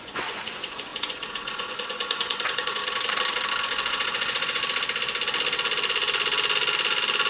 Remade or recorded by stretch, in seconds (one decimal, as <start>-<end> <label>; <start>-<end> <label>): 0.0-2.8 remade; 2.8-3.6 recorded; 3.6-4.6 remade; 4.6-7.3 recorded